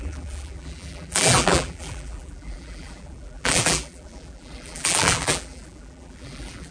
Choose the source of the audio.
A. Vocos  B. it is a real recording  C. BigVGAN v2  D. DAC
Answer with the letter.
C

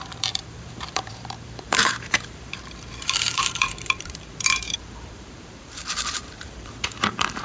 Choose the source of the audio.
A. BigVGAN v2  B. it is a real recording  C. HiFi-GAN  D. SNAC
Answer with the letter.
A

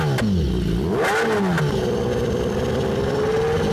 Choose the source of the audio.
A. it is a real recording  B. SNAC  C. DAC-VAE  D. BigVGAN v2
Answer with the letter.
A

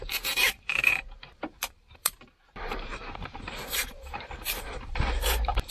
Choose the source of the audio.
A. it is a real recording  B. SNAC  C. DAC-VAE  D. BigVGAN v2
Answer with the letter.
D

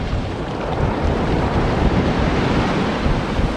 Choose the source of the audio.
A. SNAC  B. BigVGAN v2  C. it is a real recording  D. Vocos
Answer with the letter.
B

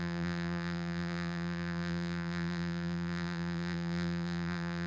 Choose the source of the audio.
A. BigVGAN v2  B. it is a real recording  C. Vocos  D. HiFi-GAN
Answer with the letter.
A